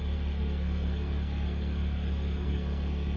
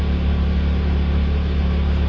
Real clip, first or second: second